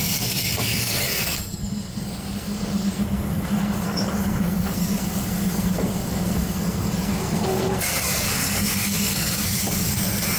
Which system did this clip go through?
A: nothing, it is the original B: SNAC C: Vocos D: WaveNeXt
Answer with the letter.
B